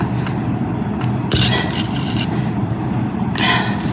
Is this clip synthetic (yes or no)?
no